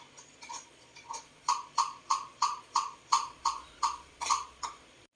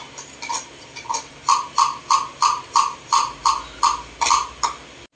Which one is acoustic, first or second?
second